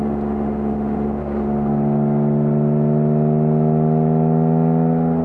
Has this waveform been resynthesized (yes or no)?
no